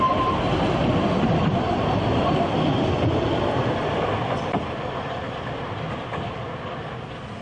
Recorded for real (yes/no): yes